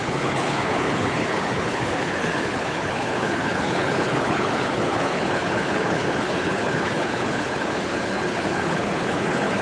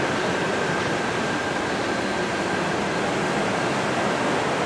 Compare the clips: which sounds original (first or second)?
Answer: second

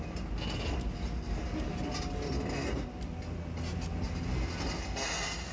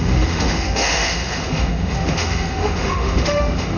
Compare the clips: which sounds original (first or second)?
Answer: first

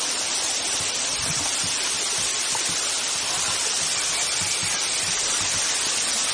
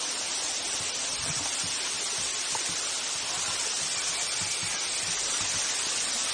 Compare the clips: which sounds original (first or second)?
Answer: second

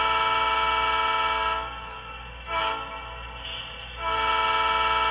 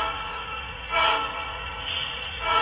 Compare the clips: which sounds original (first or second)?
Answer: first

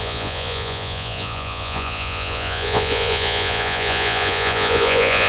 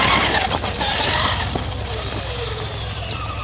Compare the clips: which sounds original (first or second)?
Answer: second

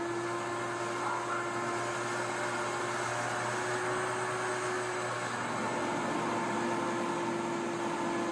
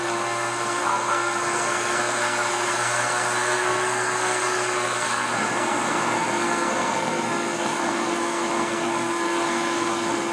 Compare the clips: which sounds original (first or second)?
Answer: first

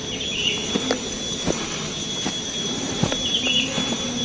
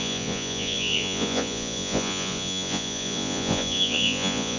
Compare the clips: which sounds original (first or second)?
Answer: first